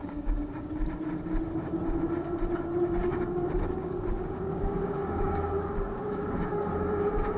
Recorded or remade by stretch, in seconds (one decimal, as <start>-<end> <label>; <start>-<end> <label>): 0.0-0.7 remade; 0.7-3.0 recorded; 3.0-6.7 remade; 6.7-7.4 recorded